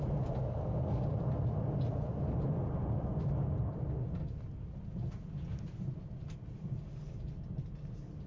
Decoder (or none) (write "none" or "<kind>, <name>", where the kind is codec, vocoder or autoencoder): none